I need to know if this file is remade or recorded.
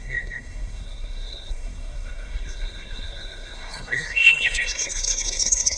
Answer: remade